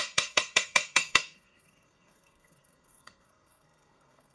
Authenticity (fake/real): fake